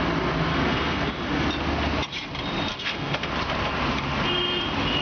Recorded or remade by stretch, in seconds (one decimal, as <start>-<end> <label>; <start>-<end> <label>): 0.0-0.5 recorded; 0.5-1.1 remade; 1.1-2.7 recorded; 2.7-3.3 remade; 3.3-5.0 recorded